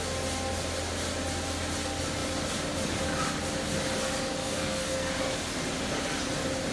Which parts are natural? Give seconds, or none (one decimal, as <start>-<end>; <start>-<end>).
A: 0.0-4.4; 5.1-6.7